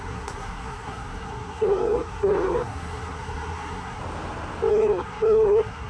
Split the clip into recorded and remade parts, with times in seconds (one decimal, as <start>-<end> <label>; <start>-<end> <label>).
0.0-4.0 remade; 4.0-4.7 recorded; 4.7-5.9 remade